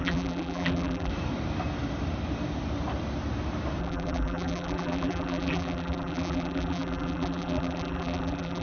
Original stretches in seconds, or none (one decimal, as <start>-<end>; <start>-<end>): 1.1-3.8